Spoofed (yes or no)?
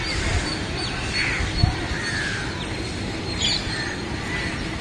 no